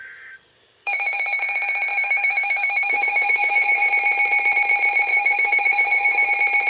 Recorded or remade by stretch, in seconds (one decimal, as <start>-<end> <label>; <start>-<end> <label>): 0.0-0.5 recorded; 0.5-1.4 remade; 1.4-1.9 recorded; 1.9-3.9 remade; 3.9-5.1 recorded; 5.1-6.3 remade; 6.3-6.7 recorded